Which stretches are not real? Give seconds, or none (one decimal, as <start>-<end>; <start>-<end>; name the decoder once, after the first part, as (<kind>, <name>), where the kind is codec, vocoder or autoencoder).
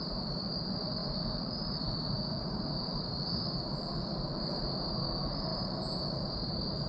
0.0-6.9 (vocoder, BigVGAN v2)